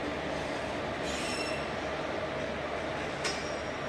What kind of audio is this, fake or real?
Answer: real